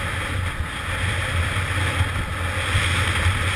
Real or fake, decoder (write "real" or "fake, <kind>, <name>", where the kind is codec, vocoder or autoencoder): real